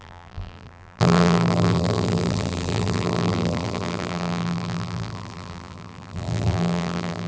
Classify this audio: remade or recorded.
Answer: remade